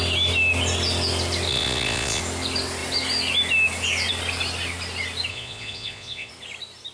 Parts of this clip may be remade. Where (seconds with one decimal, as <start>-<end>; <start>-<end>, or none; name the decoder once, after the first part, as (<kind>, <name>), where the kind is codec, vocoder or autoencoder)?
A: 1.5-2.2 (vocoder, Vocos); 5.3-6.3